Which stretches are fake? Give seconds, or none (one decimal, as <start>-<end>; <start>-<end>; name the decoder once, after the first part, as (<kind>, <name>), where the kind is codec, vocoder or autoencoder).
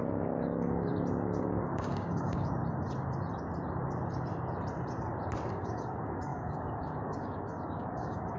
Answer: 0.0-0.9 (codec, DAC); 1.4-2.6; 5.5-8.4